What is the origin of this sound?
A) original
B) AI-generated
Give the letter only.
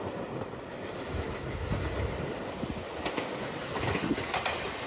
A